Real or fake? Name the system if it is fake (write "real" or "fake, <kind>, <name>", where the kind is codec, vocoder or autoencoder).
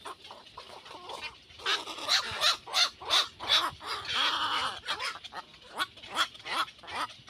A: real